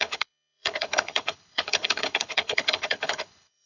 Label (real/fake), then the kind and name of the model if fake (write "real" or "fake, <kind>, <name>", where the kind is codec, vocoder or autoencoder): fake, codec, HILCodec